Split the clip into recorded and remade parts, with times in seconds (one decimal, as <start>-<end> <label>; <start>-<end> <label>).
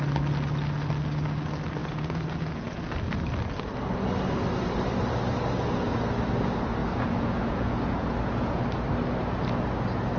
0.0-1.8 recorded; 1.8-2.8 remade; 2.8-6.8 recorded; 6.8-8.6 remade; 8.6-10.2 recorded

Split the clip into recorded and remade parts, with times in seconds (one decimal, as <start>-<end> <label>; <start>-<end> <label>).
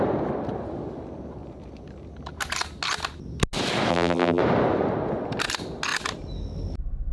0.0-3.9 recorded; 3.9-4.4 remade; 4.4-7.1 recorded